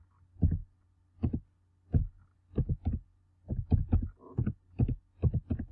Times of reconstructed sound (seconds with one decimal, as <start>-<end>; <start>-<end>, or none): none